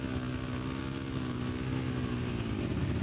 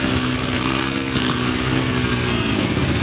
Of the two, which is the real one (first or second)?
first